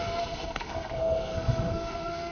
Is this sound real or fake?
fake